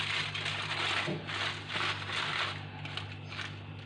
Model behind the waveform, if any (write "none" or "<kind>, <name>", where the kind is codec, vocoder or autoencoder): none